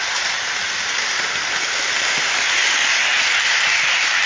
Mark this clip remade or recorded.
recorded